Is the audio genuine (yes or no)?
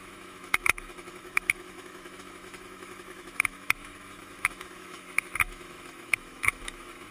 no